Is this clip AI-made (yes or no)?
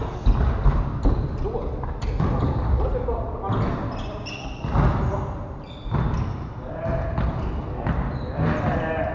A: no